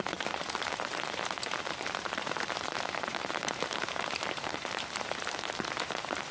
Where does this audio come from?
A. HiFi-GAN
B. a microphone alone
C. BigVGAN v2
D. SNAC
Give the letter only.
C